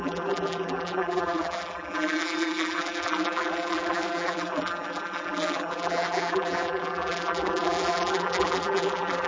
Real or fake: fake